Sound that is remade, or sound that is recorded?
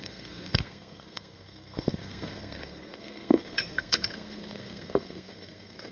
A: remade